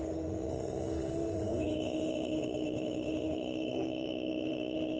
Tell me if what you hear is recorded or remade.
remade